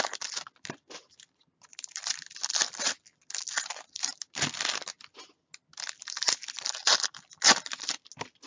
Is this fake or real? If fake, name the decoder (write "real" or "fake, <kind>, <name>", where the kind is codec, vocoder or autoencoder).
real